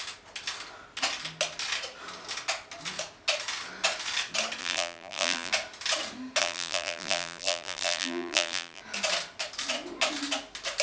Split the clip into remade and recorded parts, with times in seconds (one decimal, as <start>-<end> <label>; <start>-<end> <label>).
0.0-4.6 recorded; 4.6-5.5 remade; 5.5-6.4 recorded; 6.4-8.8 remade; 8.8-10.8 recorded